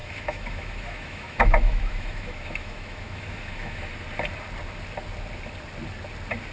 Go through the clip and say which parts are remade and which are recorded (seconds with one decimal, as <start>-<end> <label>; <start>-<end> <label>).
0.0-3.9 remade; 3.9-6.5 recorded